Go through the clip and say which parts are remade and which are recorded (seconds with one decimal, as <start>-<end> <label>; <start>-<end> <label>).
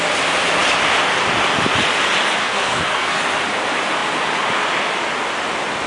0.0-2.4 recorded; 2.4-3.2 remade; 3.2-5.9 recorded